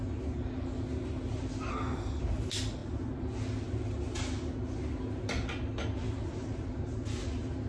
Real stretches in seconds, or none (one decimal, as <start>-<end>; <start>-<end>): 0.0-1.7; 2.2-7.7